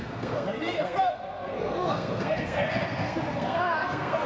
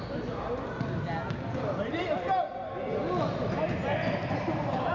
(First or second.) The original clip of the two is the second